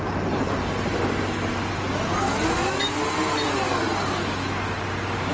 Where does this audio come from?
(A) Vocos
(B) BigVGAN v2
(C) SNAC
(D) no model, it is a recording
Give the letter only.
D